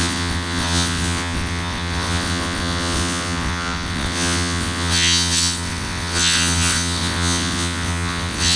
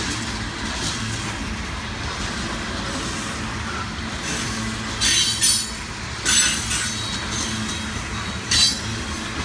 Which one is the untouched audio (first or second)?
second